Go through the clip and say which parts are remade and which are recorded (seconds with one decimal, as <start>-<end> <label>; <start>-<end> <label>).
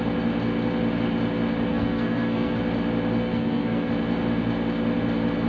0.0-1.7 recorded; 1.7-2.6 remade; 2.6-3.2 recorded; 3.2-3.9 remade; 3.9-5.5 recorded